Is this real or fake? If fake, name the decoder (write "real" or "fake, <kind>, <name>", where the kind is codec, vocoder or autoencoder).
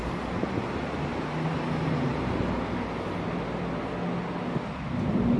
real